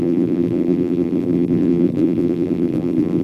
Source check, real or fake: fake